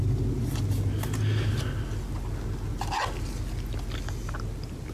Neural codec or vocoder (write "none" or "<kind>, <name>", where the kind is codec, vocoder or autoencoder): none